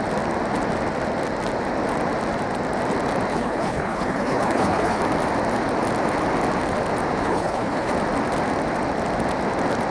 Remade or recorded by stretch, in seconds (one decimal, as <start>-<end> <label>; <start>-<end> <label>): 0.0-3.3 recorded; 3.3-5.0 remade; 5.0-7.2 recorded; 7.2-7.9 remade; 7.9-9.9 recorded